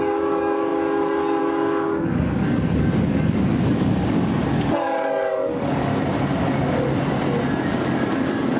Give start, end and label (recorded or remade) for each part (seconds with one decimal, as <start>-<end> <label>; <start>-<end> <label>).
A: 0.0-5.9 remade; 5.9-7.6 recorded; 7.6-8.6 remade